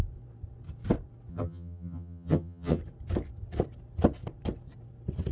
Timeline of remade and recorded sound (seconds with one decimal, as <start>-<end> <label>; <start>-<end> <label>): 0.0-1.3 recorded; 1.3-2.8 remade; 2.8-5.3 recorded